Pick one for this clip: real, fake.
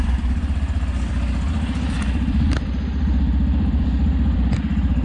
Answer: fake